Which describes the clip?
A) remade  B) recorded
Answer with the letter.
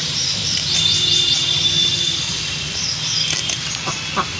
A